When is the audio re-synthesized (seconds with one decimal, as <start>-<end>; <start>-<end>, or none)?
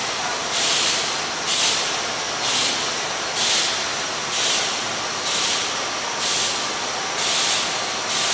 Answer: 0.0-1.2